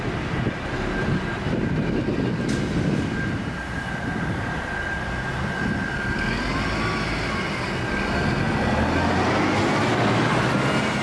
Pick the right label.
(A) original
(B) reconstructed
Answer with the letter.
A